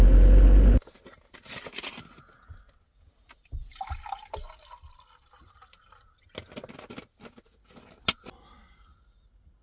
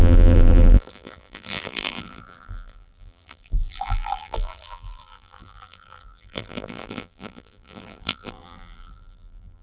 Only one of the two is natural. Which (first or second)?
first